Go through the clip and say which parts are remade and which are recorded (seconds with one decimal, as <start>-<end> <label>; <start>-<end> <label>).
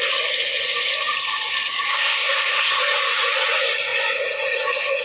0.0-1.9 recorded; 1.9-2.8 remade; 2.8-5.0 recorded